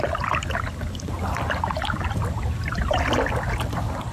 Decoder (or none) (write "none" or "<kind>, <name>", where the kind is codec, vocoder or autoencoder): none